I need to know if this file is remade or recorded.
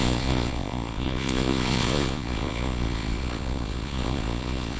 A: remade